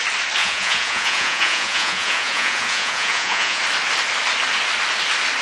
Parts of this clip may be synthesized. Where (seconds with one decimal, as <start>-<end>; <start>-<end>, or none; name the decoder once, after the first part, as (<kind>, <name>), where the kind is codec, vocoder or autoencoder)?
0.4-3.6 (vocoder, Vocos)